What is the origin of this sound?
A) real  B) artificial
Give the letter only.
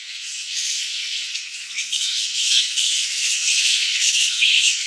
B